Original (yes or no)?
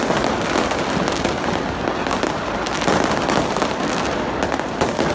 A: yes